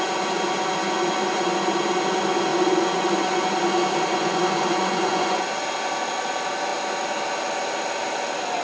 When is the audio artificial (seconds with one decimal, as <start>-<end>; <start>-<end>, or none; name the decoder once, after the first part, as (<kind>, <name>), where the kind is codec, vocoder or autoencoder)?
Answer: 2.5-3.1 (vocoder, Vocos); 4.1-5.4